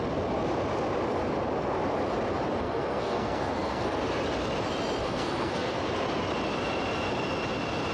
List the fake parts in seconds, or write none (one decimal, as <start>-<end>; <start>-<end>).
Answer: 2.6-4.0; 5.0-5.8